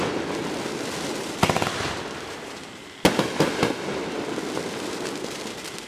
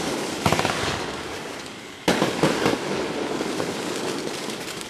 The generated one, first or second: second